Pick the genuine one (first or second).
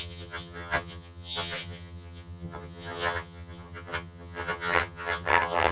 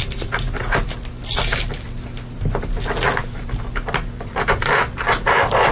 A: second